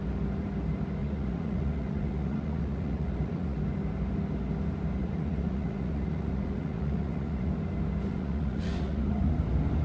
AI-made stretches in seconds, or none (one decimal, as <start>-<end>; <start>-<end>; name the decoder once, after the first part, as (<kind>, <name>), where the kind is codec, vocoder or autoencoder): 1.0-3.6 (vocoder, Vocos); 5.0-7.5; 8.1-9.3